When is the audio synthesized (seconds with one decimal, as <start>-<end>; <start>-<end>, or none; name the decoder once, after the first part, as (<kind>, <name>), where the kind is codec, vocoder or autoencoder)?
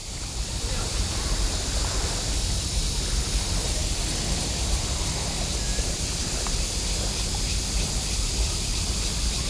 0.0-2.9 (vocoder, BigVGAN v2); 5.5-6.8